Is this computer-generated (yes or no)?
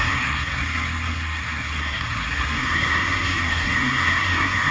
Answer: yes